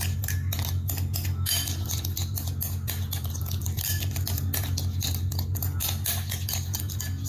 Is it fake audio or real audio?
real